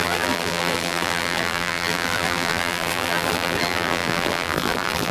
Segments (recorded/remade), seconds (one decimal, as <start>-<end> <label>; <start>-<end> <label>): 0.0-5.1 remade